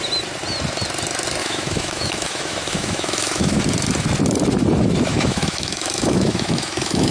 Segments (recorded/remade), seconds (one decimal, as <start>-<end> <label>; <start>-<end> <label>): 0.0-1.4 recorded; 1.4-3.6 remade; 3.6-5.1 recorded; 5.1-7.1 remade